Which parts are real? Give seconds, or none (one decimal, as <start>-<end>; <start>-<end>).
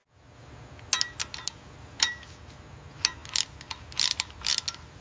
0.0-5.0